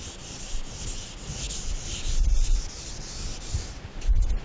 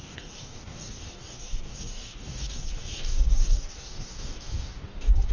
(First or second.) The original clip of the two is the first